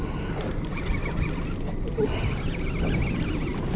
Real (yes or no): yes